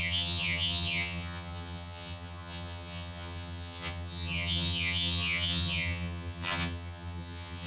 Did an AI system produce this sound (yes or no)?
yes